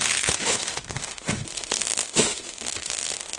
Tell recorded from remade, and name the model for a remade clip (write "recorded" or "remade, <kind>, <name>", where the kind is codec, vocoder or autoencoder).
remade, autoencoder, DAC-VAE